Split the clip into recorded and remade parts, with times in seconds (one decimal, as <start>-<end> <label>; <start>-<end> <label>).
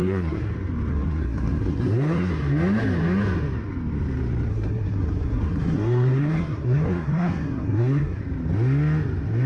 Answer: 0.0-0.5 remade; 0.5-0.9 recorded; 0.9-2.3 remade; 2.3-4.5 recorded; 4.5-8.2 remade; 8.2-9.5 recorded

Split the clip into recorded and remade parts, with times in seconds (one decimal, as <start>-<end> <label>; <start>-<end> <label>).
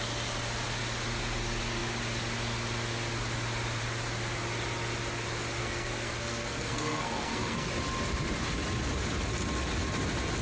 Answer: 0.0-5.6 recorded; 5.6-7.7 remade; 7.7-10.4 recorded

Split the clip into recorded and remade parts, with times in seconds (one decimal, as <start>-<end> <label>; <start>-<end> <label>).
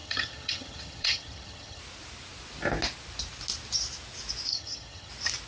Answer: 0.0-1.8 remade; 1.8-4.5 recorded; 4.5-5.1 remade; 5.1-5.5 recorded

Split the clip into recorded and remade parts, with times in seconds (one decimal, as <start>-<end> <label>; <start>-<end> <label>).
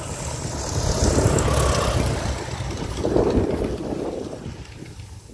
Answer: 0.0-5.3 recorded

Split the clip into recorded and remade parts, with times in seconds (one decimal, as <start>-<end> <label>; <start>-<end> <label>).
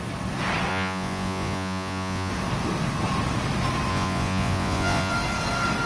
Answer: 0.0-0.7 recorded; 0.7-2.3 remade; 2.3-3.9 recorded; 3.9-5.1 remade; 5.1-5.9 recorded